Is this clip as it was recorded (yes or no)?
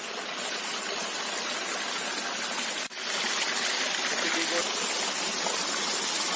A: yes